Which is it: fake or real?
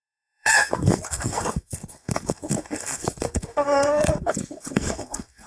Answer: fake